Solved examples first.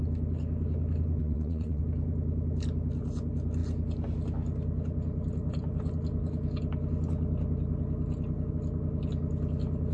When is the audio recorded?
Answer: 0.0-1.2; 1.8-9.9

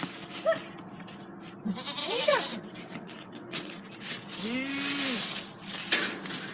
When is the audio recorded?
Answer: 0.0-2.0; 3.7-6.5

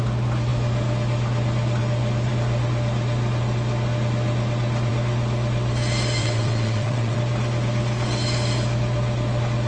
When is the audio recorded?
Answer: 0.0-6.2; 7.2-9.7

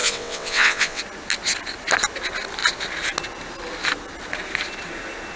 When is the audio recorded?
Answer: 1.0-5.4

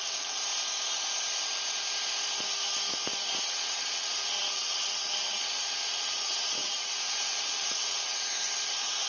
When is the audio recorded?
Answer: 0.4-3.3

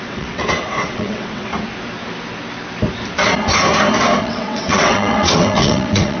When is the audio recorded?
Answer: 1.5-4.2